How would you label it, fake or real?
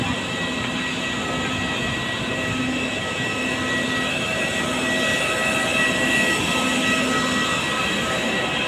real